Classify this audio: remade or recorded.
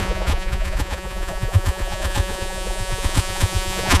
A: remade